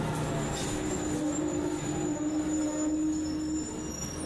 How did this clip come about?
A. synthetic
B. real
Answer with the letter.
B